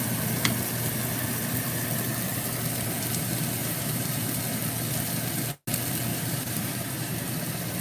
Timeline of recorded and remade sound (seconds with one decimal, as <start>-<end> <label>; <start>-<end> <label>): 0.0-3.6 recorded; 3.6-4.4 remade; 4.4-6.1 recorded; 6.1-7.2 remade; 7.2-7.8 recorded